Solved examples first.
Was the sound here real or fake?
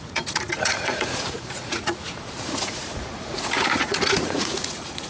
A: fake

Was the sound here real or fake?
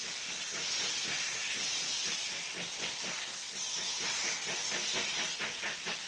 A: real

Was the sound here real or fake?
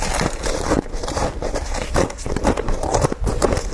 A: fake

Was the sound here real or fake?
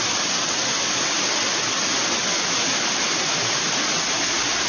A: real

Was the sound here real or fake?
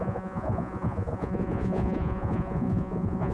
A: fake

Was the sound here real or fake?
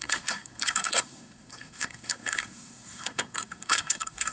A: fake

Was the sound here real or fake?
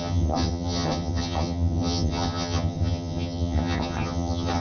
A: fake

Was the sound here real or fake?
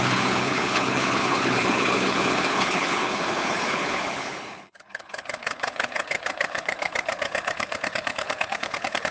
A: fake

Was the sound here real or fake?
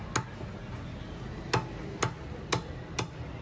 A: real